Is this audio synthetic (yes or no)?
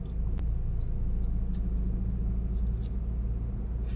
no